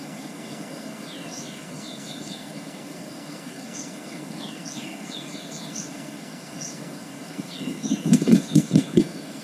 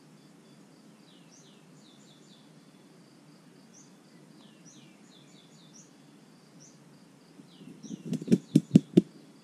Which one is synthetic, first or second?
first